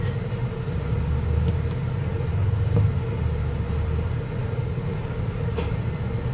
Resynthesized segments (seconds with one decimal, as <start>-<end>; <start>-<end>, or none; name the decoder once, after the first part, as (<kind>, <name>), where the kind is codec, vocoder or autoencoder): 2.3-2.9 (codec, DAC); 4.4-5.7